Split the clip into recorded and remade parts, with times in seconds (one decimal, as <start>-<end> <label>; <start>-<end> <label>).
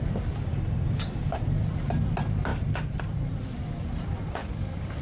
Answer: 0.0-0.5 recorded; 0.5-1.4 remade; 1.4-5.0 recorded